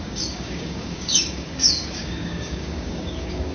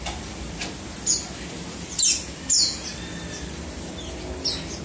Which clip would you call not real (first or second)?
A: first